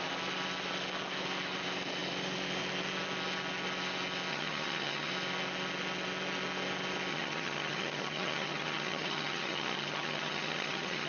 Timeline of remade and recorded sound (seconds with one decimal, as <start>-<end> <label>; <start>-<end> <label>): 0.0-4.3 recorded; 4.3-5.1 remade; 5.1-7.1 recorded; 7.1-11.1 remade